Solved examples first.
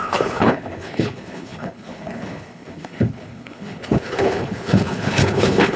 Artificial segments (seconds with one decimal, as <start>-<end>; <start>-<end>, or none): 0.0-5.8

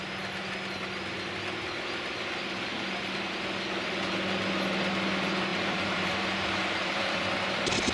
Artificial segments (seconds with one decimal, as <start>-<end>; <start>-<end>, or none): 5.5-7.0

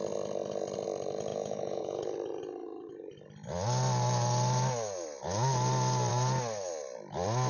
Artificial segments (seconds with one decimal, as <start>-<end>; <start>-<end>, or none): 1.3-2.0

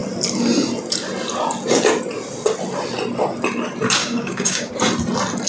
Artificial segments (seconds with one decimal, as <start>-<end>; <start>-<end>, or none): 4.0-4.7